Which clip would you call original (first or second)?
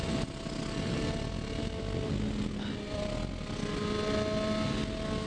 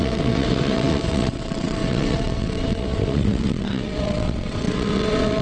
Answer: first